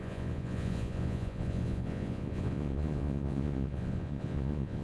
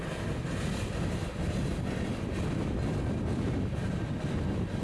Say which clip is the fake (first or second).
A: first